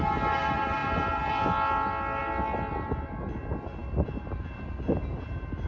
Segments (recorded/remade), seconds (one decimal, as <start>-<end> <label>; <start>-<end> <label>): 0.0-5.7 recorded